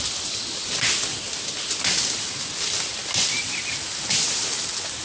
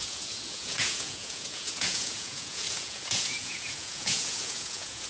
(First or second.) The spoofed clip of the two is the second